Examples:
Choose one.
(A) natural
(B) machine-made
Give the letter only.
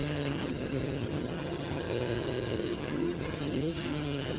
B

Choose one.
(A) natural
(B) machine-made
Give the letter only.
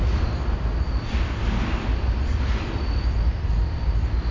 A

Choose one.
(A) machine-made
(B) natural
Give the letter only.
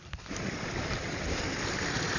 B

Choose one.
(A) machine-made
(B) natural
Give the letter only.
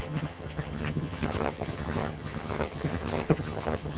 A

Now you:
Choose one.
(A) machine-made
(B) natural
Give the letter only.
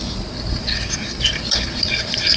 B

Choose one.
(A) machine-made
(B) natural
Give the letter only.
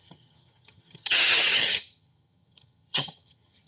A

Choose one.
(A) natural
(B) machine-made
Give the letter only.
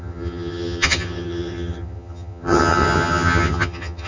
B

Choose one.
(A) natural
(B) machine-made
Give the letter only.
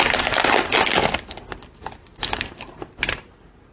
A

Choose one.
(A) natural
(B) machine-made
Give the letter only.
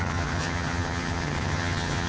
B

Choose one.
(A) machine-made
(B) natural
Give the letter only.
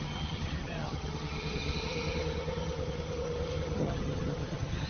A